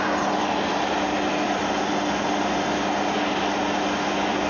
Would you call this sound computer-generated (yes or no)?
no